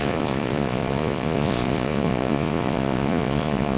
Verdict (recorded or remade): remade